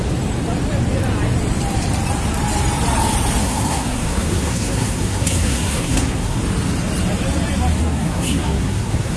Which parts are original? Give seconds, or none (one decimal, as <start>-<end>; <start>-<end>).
0.0-3.4; 6.4-7.8